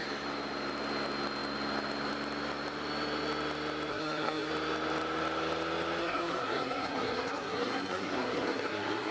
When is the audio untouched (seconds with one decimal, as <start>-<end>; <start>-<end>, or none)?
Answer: 0.0-3.9; 4.5-6.0